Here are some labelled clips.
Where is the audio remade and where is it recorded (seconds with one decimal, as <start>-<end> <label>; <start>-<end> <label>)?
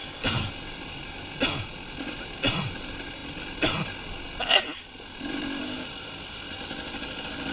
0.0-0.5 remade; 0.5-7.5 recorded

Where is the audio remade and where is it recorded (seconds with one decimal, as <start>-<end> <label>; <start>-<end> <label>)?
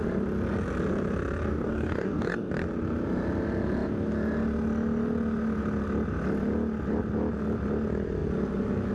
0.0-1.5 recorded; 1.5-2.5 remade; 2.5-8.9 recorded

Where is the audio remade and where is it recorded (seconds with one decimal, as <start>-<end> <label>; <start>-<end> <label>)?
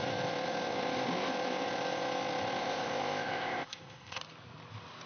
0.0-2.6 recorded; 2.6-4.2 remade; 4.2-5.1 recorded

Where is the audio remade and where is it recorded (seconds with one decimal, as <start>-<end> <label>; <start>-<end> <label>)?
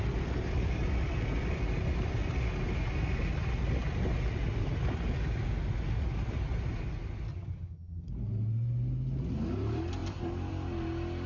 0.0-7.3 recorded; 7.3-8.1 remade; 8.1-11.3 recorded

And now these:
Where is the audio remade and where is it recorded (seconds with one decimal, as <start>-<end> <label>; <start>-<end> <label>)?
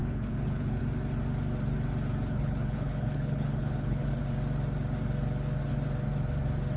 0.0-0.8 remade; 0.8-2.3 recorded; 2.3-4.2 remade; 4.2-6.8 recorded